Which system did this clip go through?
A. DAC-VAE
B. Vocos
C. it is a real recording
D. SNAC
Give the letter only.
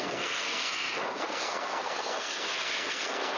D